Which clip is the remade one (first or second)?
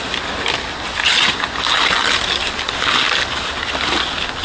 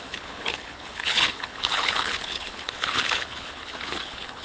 second